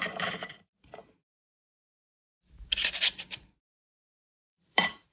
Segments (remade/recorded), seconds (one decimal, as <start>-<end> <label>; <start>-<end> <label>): 0.0-1.0 remade; 1.0-3.9 recorded; 3.9-5.1 remade